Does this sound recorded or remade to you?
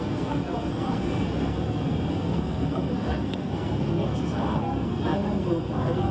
remade